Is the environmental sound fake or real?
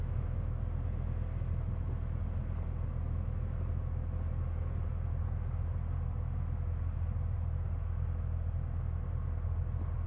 real